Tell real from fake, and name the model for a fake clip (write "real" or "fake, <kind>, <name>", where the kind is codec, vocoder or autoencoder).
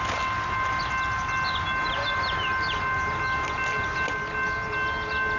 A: real